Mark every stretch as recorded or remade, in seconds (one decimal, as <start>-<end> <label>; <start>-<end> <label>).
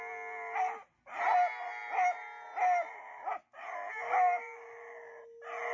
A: 0.0-5.7 recorded